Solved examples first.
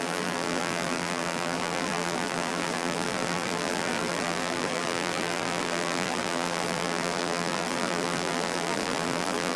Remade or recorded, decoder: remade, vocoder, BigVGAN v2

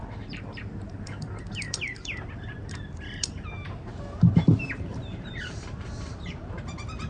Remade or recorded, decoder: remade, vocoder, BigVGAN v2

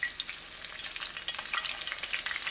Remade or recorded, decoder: recorded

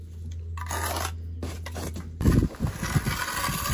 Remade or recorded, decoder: recorded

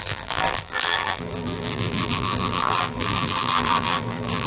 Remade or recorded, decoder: remade, vocoder, BigVGAN v2